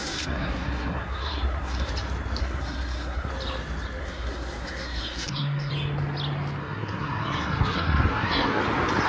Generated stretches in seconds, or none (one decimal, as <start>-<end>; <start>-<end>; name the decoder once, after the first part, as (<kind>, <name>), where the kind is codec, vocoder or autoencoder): 0.0-1.9 (codec, SNAC); 2.4-3.3; 4.0-5.7; 6.6-8.6